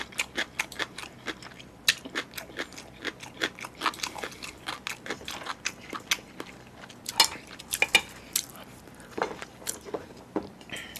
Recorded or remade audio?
recorded